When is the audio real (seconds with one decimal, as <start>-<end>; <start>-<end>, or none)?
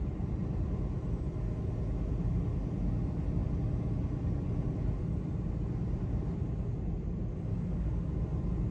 0.0-7.5; 8.0-8.7